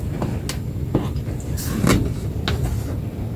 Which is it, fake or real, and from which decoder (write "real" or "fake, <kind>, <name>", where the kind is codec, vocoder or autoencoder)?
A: real